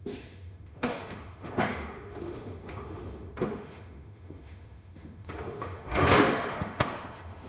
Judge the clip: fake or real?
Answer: fake